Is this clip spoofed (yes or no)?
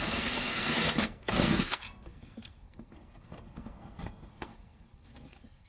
yes